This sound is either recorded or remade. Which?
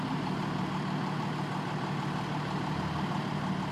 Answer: recorded